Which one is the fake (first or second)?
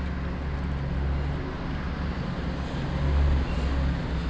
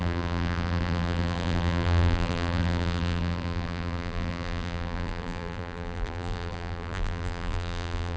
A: second